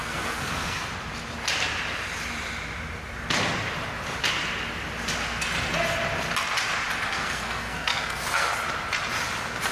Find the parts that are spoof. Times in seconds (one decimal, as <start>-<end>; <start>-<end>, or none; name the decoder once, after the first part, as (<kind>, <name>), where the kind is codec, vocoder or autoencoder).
0.0-0.8 (codec, SNAC); 7.1-8.5